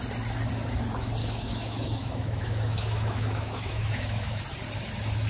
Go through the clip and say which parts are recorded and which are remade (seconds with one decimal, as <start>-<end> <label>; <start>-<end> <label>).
0.0-1.2 recorded; 1.2-4.4 remade; 4.4-5.3 recorded